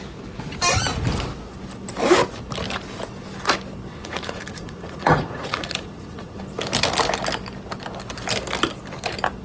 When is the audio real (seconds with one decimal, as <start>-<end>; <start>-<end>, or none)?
0.0-3.9; 6.4-9.4